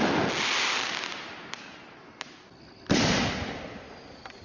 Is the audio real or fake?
real